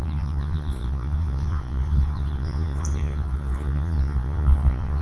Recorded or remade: remade